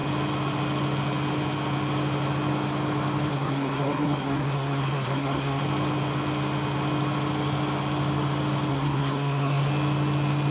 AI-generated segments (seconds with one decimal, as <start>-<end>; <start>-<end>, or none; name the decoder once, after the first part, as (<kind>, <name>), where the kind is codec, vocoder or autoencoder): 3.3-5.6 (codec, SNAC); 8.7-9.7